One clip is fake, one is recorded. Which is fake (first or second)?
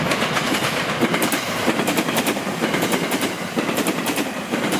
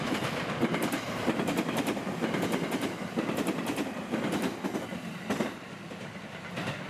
first